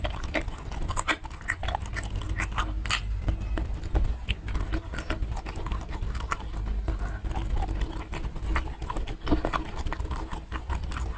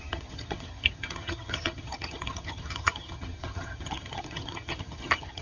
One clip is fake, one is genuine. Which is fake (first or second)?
second